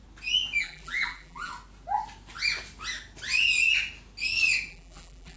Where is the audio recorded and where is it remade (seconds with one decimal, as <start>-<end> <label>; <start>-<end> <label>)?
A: 0.0-0.6 recorded; 0.6-1.5 remade; 1.5-4.7 recorded; 4.7-5.4 remade

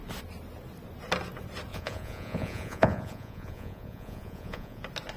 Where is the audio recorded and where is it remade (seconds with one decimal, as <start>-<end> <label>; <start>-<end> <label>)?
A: 0.0-1.7 recorded; 1.7-4.8 remade; 4.8-5.2 recorded

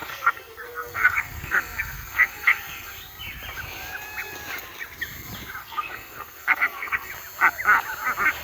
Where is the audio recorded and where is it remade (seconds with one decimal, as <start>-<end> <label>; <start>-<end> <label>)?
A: 0.0-2.9 remade; 2.9-5.6 recorded; 5.6-7.1 remade; 7.1-8.4 recorded

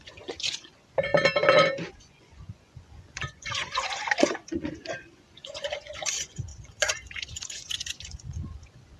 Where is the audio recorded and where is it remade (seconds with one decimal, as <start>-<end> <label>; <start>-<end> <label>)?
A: 0.0-1.1 remade; 1.1-1.9 recorded; 1.9-9.0 remade

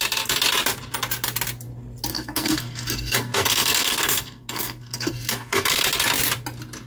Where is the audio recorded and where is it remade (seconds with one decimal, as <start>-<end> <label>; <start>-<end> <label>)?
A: 0.0-2.1 recorded; 2.1-5.8 remade; 5.8-6.9 recorded